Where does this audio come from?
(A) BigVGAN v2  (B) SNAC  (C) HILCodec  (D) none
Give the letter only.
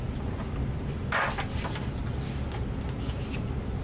A